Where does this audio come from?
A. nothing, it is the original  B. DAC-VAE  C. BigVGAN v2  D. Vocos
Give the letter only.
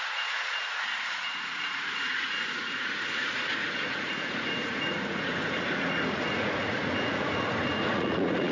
D